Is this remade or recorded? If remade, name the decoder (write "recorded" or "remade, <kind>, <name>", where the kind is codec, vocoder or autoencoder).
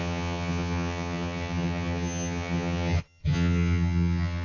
remade, vocoder, HiFi-GAN